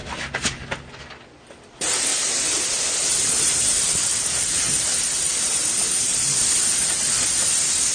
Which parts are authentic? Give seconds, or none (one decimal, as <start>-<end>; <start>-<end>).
0.0-7.9